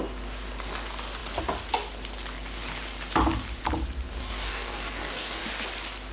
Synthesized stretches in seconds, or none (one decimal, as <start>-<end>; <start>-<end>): 4.2-5.4